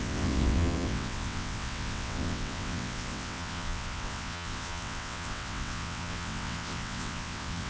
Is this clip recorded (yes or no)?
no